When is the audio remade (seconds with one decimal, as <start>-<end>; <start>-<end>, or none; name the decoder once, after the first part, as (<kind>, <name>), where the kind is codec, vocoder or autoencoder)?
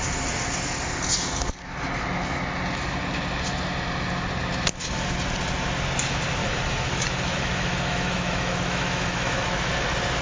6.4-9.7 (autoencoder, DAC-VAE)